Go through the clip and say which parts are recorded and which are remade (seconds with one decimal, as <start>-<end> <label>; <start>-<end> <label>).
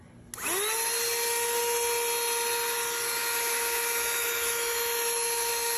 0.0-3.2 recorded; 3.2-5.8 remade